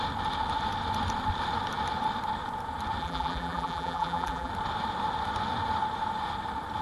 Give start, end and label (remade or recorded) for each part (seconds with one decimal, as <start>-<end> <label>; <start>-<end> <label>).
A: 0.0-3.0 recorded; 3.0-4.5 remade; 4.5-6.8 recorded